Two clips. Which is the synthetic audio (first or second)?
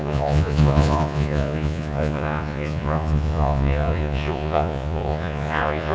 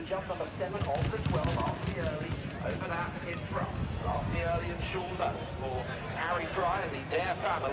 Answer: first